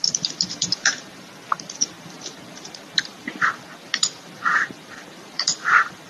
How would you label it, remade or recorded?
remade